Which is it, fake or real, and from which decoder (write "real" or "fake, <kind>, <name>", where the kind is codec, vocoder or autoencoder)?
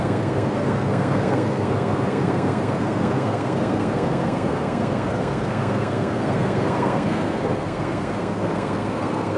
fake, codec, SNAC